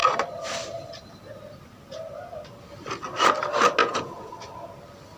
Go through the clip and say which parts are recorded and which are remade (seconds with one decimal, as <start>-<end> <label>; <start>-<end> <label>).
0.0-3.8 recorded; 3.8-4.3 remade; 4.3-5.2 recorded